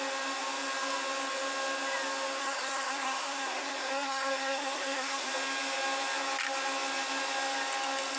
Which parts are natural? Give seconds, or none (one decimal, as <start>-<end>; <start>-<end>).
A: 0.0-2.4; 5.3-8.2